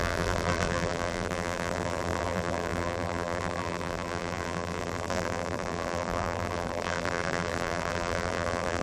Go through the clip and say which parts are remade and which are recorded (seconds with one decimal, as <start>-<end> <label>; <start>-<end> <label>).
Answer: 0.0-8.8 remade